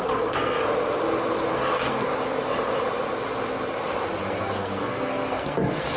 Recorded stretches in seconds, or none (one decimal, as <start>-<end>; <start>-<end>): 0.6-1.5; 2.1-4.2